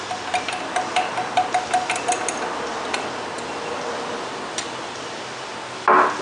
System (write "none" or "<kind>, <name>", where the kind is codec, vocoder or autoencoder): none